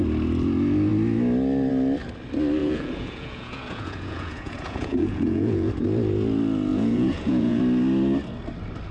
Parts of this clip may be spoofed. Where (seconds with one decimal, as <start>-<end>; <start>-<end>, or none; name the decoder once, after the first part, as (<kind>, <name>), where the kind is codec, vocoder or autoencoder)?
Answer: 2.6-5.7 (vocoder, Vocos); 6.7-7.6